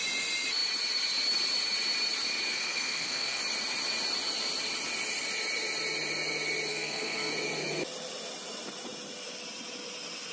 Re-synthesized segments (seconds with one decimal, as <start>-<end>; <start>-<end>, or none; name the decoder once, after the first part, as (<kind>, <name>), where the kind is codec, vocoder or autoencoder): 2.5-3.4 (codec, SNAC); 6.7-7.3